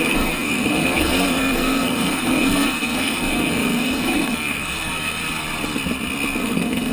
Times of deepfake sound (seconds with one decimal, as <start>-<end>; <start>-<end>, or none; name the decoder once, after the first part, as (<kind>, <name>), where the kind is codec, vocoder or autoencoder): 0.0-5.2 (codec, SNAC); 6.4-6.9